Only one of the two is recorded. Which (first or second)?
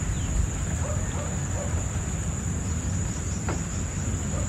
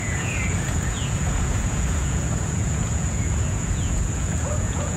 first